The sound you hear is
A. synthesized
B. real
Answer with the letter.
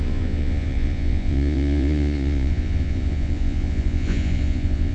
A